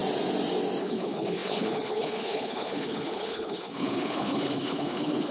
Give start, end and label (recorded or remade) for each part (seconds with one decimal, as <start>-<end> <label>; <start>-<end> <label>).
0.0-0.8 recorded; 0.8-5.3 remade